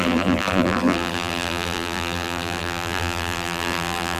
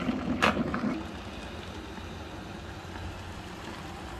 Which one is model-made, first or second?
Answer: first